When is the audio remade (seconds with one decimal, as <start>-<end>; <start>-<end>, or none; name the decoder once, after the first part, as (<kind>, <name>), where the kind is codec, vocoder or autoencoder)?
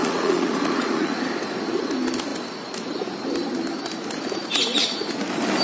0.0-1.2 (vocoder, Vocos)